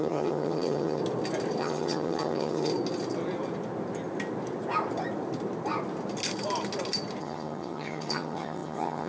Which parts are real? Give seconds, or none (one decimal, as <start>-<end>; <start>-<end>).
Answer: 1.0-1.6; 2.7-7.2